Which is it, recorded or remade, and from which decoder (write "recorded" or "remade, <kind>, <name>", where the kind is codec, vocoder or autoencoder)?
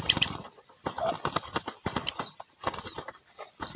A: recorded